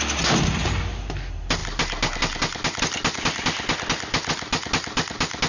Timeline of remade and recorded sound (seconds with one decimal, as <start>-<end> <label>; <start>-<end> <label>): 0.0-5.5 recorded

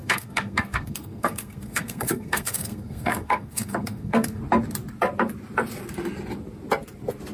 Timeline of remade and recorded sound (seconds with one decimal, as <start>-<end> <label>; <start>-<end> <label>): 0.0-4.4 remade; 4.4-7.3 recorded

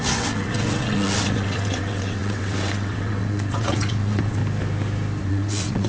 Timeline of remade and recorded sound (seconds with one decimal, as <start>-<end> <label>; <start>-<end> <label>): 0.0-4.4 remade; 4.4-5.3 recorded; 5.3-5.9 remade

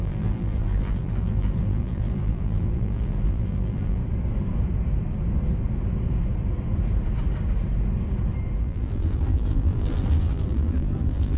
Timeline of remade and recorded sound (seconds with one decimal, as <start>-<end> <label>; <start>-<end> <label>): 0.0-4.0 remade; 4.0-8.6 recorded; 8.6-11.4 remade

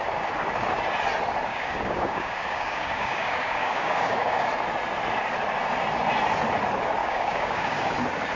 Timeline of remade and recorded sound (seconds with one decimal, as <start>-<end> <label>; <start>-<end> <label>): 0.0-1.5 recorded; 1.5-4.5 remade; 4.5-7.0 recorded; 7.0-7.9 remade; 7.9-8.4 recorded